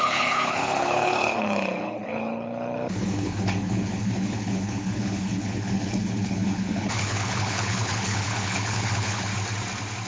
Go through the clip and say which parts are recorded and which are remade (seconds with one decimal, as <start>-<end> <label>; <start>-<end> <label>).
0.0-9.3 remade; 9.3-10.1 recorded

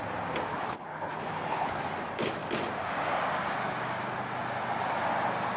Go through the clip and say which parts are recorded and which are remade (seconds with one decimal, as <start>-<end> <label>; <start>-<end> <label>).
0.0-0.5 recorded; 0.5-1.8 remade; 1.8-5.6 recorded

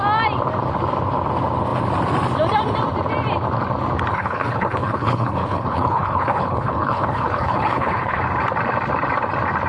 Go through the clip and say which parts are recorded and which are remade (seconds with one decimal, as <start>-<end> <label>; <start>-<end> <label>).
0.0-4.1 recorded; 4.1-8.2 remade; 8.2-9.7 recorded

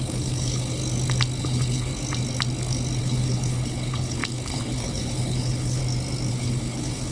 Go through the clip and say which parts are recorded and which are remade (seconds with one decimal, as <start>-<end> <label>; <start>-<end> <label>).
0.0-0.8 remade; 0.8-1.4 recorded; 1.4-1.9 remade; 1.9-3.0 recorded; 3.0-5.8 remade; 5.8-6.3 recorded; 6.3-7.1 remade

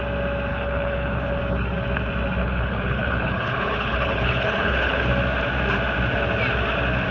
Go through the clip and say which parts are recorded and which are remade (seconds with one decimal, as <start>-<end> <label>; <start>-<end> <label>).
0.0-0.5 recorded; 0.5-1.4 remade; 1.4-2.4 recorded; 2.4-5.1 remade; 5.1-7.1 recorded

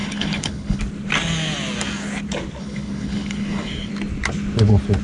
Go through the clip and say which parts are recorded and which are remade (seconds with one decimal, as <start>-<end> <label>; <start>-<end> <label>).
0.0-0.8 remade; 0.8-2.6 recorded; 2.6-3.9 remade; 3.9-5.0 recorded